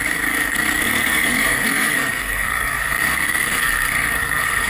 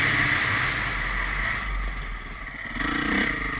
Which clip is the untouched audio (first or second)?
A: second